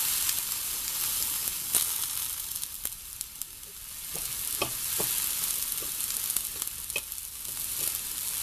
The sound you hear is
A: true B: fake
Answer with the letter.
A